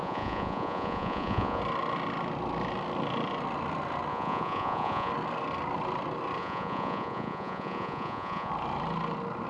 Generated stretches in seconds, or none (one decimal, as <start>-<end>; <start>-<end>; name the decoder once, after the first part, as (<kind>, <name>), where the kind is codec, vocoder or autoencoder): 0.0-1.6 (vocoder, Vocos); 4.1-5.1; 6.4-8.5